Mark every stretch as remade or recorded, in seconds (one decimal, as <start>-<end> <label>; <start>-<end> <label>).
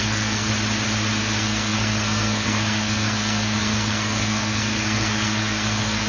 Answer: 0.0-0.5 remade; 0.5-1.2 recorded; 1.2-6.1 remade